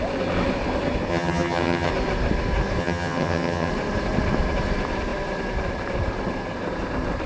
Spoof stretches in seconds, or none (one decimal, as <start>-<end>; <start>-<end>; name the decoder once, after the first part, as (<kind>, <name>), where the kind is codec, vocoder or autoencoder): 1.1-1.9 (vocoder, HiFi-GAN); 2.8-3.7